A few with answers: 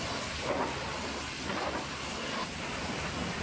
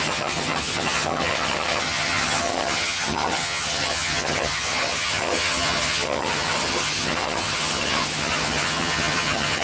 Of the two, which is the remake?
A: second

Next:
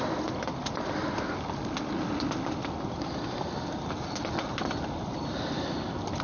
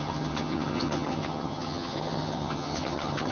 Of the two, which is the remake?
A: second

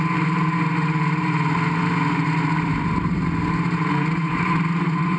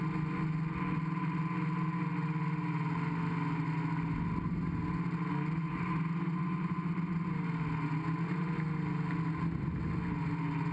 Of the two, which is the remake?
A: first